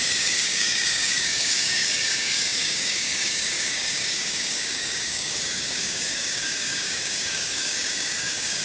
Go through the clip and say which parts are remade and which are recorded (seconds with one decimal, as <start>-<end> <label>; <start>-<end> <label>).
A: 0.0-8.6 remade